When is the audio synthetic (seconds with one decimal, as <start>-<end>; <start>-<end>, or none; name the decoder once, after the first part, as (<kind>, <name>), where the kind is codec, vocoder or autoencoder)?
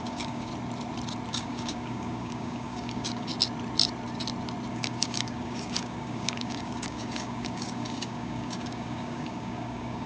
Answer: 0.0-0.5 (codec, DAC); 1.3-3.3; 4.7-10.1